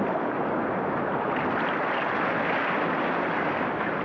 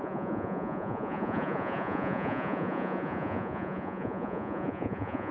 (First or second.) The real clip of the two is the first